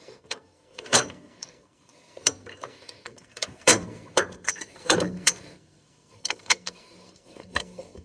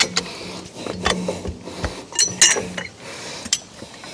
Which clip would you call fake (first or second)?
first